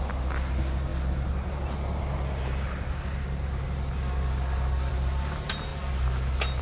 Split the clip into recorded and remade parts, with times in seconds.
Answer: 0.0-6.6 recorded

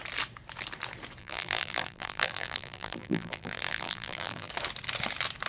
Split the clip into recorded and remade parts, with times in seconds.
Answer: 0.0-1.2 recorded; 1.2-4.5 remade; 4.5-5.5 recorded

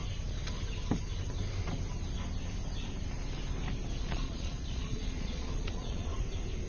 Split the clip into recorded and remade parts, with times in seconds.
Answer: 0.0-4.0 recorded; 4.0-6.1 remade; 6.1-6.7 recorded

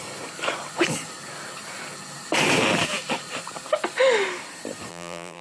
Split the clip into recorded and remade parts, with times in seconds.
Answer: 0.0-4.9 recorded; 4.9-5.4 remade